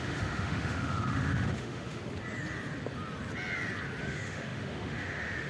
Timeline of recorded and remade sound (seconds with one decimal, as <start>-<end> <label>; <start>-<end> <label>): 0.0-2.0 remade; 2.0-4.0 recorded; 4.0-5.5 remade